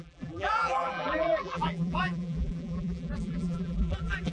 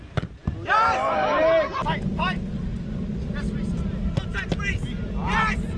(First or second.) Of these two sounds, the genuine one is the second